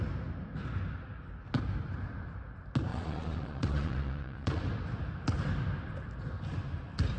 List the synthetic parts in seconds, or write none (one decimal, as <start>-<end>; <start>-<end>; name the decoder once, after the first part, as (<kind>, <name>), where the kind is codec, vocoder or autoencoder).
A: 2.9-4.6 (vocoder, Vocos)